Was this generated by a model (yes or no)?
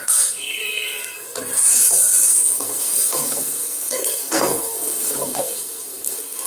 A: yes